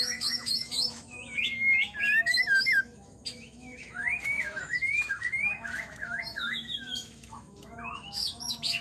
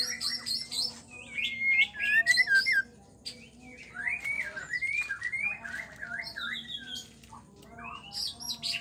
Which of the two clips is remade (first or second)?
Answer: first